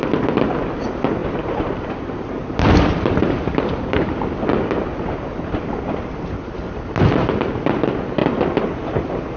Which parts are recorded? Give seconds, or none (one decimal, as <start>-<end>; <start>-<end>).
0.0-1.2; 4.1-9.4